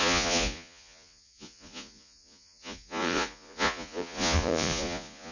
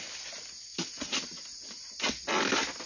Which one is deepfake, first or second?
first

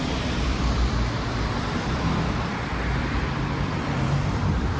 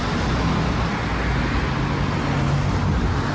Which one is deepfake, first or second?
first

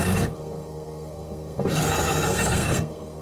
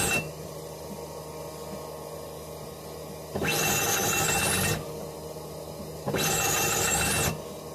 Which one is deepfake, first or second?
first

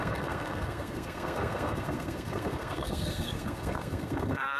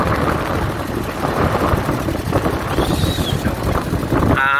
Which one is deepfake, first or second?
first